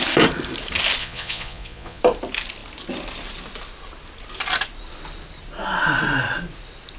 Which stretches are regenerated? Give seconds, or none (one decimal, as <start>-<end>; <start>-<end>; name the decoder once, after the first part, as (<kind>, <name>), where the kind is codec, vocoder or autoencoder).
1.0-2.0 (vocoder, Vocos)